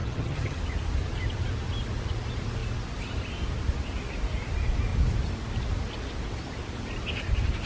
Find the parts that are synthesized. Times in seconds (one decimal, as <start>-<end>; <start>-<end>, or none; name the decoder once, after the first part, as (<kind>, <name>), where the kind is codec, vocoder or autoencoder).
0.0-0.6 (vocoder, HiFi-GAN)